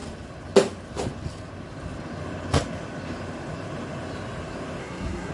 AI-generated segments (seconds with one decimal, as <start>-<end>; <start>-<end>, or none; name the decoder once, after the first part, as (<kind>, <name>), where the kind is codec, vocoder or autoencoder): 4.8-5.3 (codec, SNAC)